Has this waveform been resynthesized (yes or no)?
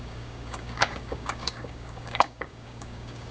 yes